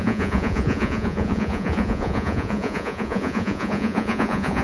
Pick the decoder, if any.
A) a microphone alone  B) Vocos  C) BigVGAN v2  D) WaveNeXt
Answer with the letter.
B